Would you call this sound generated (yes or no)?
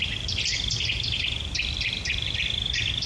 no